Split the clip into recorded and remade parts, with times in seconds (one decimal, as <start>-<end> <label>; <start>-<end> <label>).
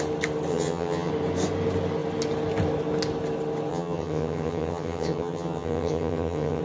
0.0-0.5 recorded; 0.5-1.1 remade; 1.1-3.7 recorded; 3.7-6.6 remade